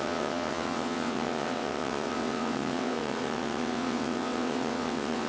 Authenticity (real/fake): fake